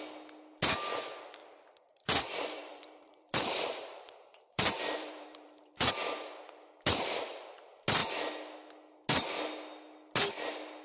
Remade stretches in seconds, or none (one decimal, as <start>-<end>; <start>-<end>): 1.4-5.9